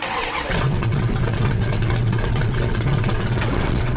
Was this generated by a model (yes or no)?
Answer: yes